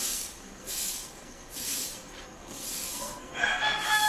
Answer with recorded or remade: remade